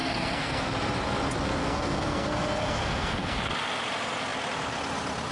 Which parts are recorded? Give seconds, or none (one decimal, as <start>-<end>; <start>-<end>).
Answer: 0.7-1.6; 3.5-5.3